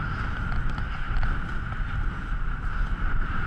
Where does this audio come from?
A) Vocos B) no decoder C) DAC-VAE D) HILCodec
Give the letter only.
B